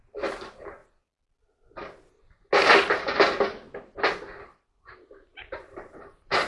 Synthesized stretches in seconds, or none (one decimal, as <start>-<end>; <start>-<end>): 0.0-0.8; 4.4-6.5